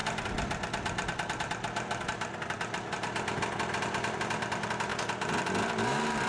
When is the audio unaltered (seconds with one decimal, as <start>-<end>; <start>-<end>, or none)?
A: 0.0-3.8; 4.9-6.3